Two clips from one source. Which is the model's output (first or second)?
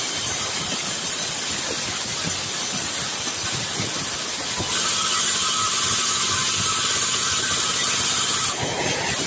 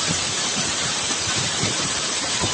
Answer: second